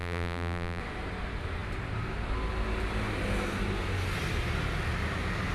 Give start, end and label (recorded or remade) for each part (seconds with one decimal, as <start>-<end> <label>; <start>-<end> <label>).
0.0-0.8 remade; 0.8-5.5 recorded